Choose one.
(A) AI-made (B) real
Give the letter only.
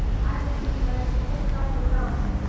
B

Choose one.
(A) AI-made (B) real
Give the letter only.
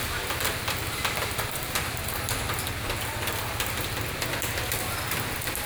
B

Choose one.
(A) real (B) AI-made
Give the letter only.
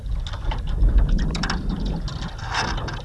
A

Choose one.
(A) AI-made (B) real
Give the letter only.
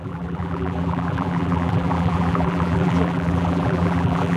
A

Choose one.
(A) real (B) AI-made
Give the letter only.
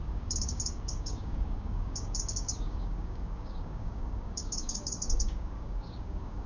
B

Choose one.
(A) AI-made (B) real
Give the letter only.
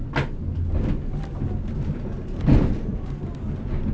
B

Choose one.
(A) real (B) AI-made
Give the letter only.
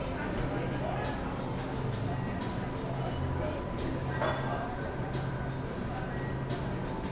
A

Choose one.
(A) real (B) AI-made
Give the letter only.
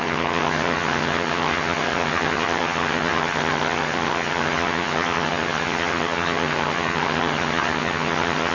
B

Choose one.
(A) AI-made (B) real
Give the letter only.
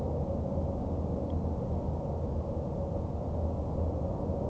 B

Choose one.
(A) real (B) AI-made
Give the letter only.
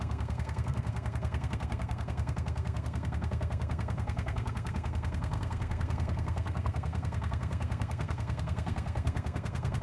B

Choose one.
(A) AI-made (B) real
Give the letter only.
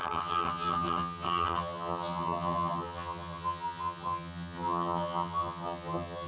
A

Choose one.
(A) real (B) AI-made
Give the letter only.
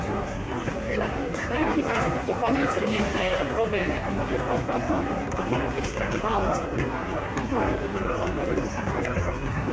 B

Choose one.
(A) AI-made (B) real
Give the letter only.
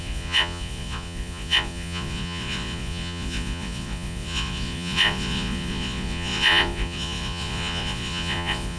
A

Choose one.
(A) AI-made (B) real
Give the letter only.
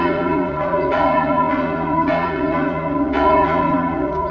A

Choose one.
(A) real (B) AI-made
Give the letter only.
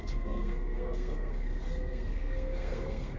B